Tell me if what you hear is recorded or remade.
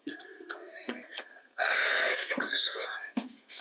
remade